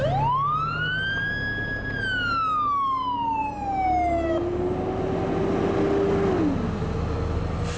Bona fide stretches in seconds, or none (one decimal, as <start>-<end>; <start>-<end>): 0.0-7.8